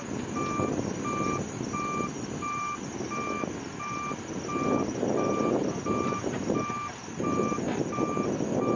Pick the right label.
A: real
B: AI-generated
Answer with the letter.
A